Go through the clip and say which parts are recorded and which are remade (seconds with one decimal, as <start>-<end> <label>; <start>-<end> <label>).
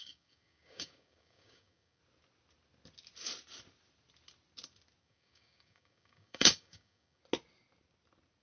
0.0-2.0 remade; 2.0-5.0 recorded; 5.0-7.2 remade; 7.2-8.4 recorded